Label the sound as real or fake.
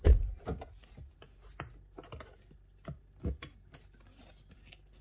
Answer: real